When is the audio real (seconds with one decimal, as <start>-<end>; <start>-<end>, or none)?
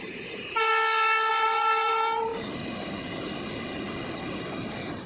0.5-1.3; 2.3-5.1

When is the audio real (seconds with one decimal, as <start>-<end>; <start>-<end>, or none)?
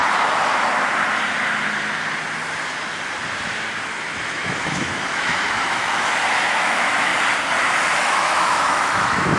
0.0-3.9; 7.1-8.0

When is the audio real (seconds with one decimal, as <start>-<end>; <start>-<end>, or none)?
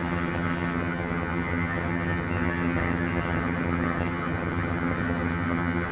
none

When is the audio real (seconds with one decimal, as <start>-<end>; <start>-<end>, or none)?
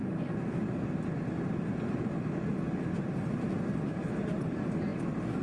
0.0-5.4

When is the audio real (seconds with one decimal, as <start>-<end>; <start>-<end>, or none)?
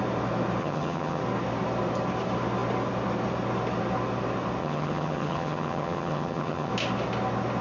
0.0-0.6; 1.2-4.6; 6.7-7.6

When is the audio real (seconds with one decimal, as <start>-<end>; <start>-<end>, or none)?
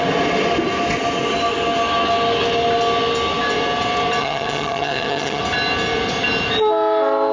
0.0-4.2; 5.4-7.3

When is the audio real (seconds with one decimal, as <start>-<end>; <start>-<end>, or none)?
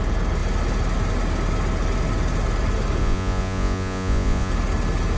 0.0-3.0; 4.5-5.2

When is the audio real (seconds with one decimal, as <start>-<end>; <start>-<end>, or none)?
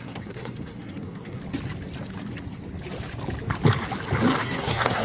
1.4-4.4